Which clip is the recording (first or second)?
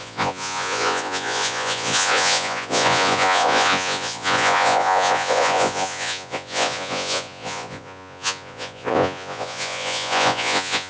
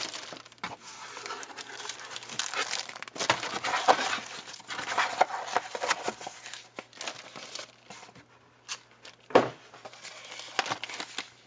second